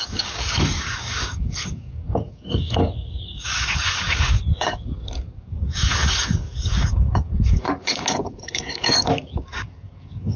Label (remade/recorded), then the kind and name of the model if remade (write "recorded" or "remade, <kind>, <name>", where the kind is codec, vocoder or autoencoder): remade, codec, DAC